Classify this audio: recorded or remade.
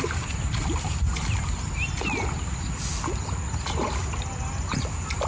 recorded